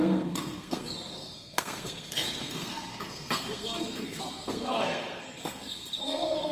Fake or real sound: fake